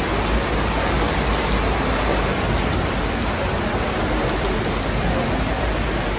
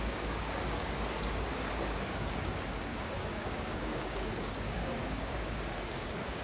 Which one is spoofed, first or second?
second